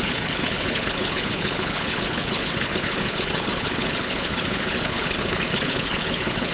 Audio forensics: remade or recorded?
remade